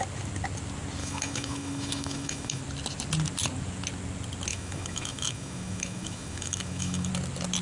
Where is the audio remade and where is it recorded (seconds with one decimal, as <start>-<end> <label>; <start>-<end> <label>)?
0.0-1.0 recorded; 1.0-2.6 remade; 2.6-4.5 recorded; 4.5-7.1 remade; 7.1-7.6 recorded